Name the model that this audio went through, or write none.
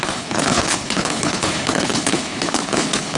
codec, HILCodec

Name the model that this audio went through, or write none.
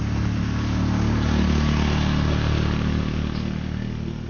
none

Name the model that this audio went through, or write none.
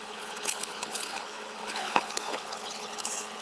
codec, HILCodec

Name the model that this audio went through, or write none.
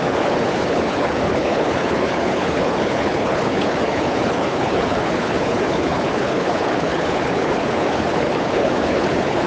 codec, HILCodec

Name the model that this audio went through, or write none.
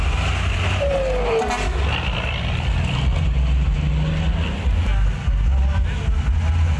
none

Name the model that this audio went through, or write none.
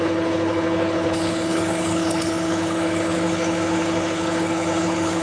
codec, HILCodec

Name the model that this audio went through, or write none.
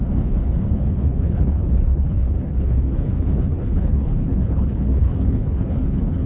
codec, HILCodec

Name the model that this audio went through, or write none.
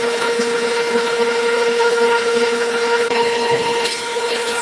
codec, HILCodec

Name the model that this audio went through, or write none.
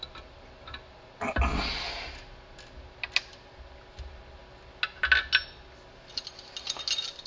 none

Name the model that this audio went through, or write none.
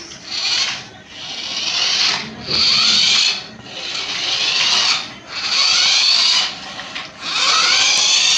none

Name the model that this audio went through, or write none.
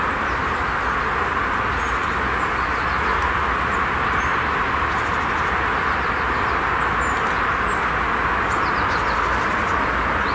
none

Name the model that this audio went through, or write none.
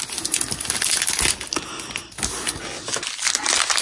none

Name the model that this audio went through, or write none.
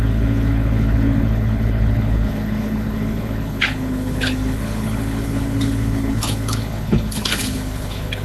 codec, HILCodec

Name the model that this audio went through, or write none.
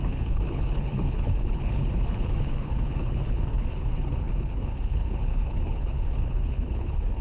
codec, HILCodec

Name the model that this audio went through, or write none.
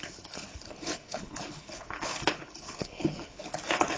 codec, HILCodec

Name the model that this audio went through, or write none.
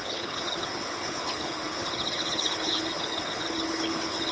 codec, HILCodec